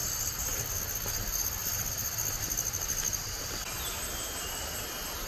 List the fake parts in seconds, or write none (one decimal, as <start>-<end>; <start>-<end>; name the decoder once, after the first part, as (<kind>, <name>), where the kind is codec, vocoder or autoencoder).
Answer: none